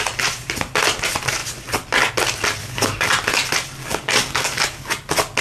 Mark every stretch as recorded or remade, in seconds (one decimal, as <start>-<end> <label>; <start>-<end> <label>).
0.0-2.6 recorded; 2.6-3.1 remade; 3.1-3.8 recorded; 3.8-4.9 remade; 4.9-5.4 recorded